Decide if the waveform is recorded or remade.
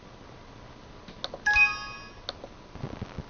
recorded